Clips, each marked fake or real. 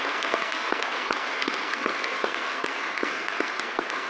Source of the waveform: fake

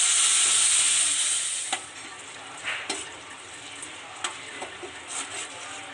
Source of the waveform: real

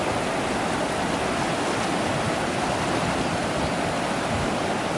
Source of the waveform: real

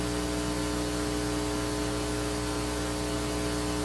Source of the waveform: real